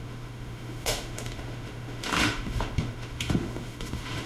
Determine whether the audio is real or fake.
fake